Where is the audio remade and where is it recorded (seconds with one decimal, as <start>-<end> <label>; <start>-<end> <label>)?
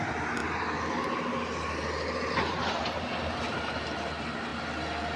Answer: 0.0-5.2 recorded